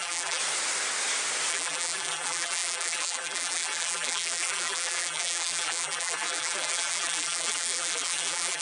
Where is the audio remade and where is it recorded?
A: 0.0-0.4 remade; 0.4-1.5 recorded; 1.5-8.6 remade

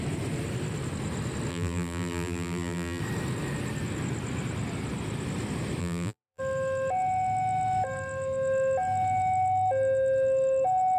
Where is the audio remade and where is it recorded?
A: 0.0-1.5 recorded; 1.5-3.0 remade; 3.0-5.8 recorded; 5.8-6.4 remade; 6.4-11.0 recorded

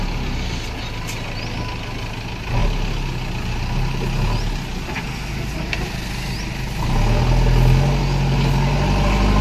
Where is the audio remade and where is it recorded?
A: 0.0-9.4 recorded

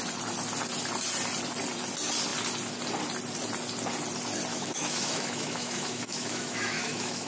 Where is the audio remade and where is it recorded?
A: 0.0-4.5 recorded; 4.5-7.3 remade

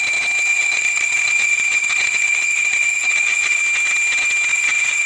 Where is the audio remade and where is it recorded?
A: 0.0-0.5 recorded; 0.5-3.6 remade; 3.6-4.5 recorded; 4.5-5.1 remade

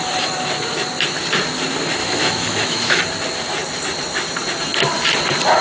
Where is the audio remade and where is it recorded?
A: 0.0-2.0 recorded; 2.0-3.0 remade; 3.0-5.6 recorded